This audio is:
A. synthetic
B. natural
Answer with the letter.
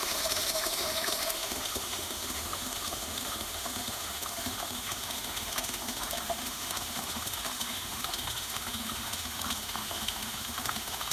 A